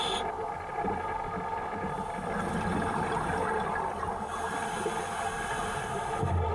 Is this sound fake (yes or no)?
no